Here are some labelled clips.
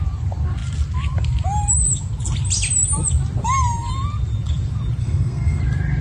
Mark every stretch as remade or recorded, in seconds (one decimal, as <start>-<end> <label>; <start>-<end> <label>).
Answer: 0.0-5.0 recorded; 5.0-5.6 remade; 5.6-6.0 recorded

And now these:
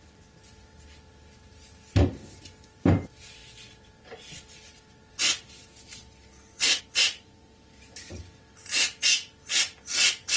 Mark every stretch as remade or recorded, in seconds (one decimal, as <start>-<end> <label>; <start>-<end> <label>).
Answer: 0.0-10.4 recorded

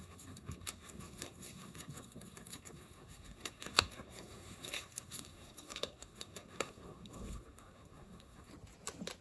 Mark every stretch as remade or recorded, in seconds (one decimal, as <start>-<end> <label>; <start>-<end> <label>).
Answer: 0.0-8.5 remade; 8.5-9.2 recorded

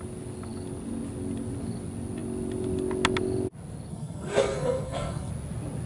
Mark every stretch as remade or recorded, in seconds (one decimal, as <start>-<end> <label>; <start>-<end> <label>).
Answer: 0.0-3.9 recorded; 3.9-5.3 remade; 5.3-5.9 recorded

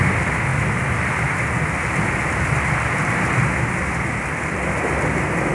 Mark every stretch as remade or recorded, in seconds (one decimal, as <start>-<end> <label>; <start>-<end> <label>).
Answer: 0.0-5.5 recorded

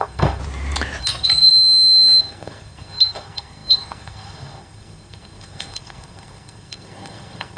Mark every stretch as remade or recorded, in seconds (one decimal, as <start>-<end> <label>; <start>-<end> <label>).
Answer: 0.0-0.4 remade; 0.4-1.0 recorded; 1.0-1.5 remade; 1.5-2.2 recorded; 2.2-7.6 remade

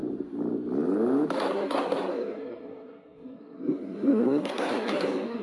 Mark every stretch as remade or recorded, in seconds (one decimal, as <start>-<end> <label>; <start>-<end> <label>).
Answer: 0.0-1.4 recorded; 1.4-5.4 remade